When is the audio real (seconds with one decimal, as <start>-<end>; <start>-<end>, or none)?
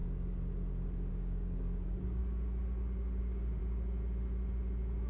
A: 0.0-1.1; 2.2-3.2; 3.6-5.1